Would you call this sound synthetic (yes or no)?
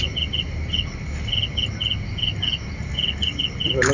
no